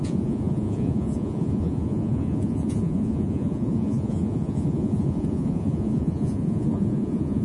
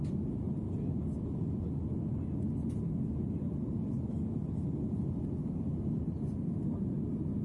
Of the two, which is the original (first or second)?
second